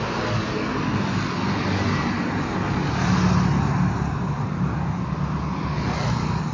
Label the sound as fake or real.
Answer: real